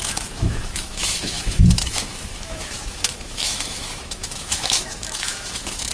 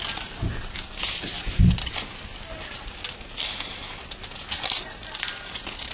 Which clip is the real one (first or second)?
second